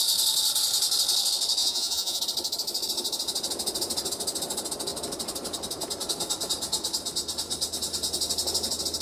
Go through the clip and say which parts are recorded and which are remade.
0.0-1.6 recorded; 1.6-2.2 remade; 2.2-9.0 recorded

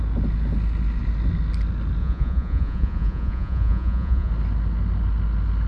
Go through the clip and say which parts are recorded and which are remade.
0.0-2.0 recorded; 2.0-4.3 remade; 4.3-5.7 recorded